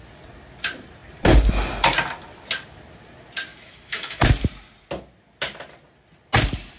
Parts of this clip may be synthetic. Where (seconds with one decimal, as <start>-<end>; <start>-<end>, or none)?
3.5-4.2